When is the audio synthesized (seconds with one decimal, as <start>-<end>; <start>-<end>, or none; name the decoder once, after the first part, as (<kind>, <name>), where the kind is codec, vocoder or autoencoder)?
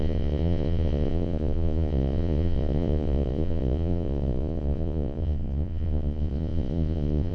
0.0-7.3 (vocoder, Vocos)